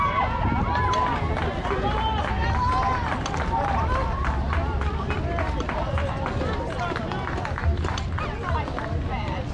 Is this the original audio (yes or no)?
yes